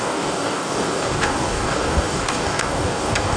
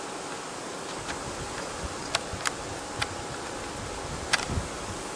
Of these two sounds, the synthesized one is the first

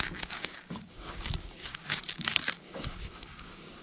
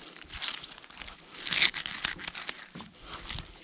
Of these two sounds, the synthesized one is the first